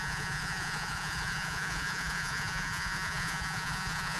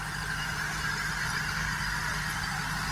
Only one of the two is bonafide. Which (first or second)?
second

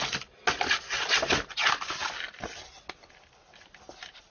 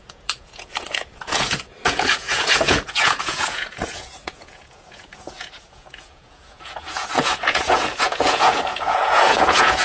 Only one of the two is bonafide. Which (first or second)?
first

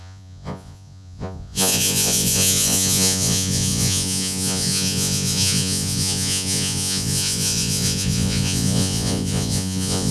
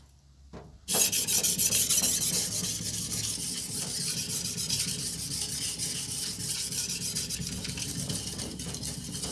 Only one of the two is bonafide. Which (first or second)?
second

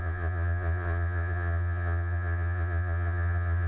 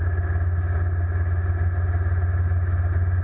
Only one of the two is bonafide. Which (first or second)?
second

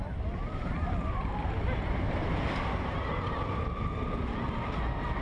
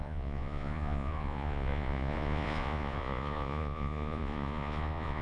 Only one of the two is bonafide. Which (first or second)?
first